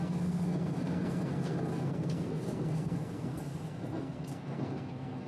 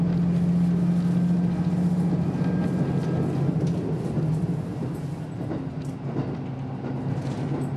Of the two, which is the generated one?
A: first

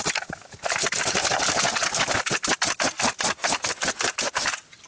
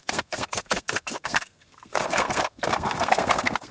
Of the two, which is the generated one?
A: second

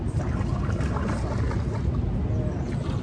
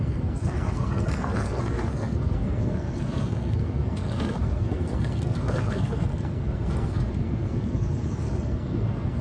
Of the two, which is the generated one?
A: second